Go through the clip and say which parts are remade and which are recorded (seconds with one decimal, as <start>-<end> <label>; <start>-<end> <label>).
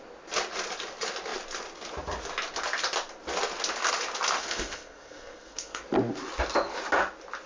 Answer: 0.0-4.4 recorded; 4.4-5.8 remade; 5.8-7.5 recorded